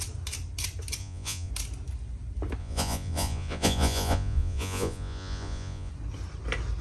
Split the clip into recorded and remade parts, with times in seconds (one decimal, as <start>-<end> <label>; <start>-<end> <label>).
0.0-1.0 recorded; 1.0-1.5 remade; 1.5-2.6 recorded; 2.6-5.9 remade; 5.9-6.8 recorded